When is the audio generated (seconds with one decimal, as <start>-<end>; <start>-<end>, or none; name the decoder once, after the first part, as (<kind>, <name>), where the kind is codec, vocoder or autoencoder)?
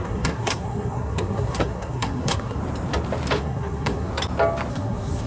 0.0-2.6 (codec, SNAC); 3.4-4.1; 4.7-5.3